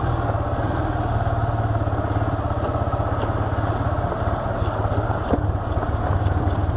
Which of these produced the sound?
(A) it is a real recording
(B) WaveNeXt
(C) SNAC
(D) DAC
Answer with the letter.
A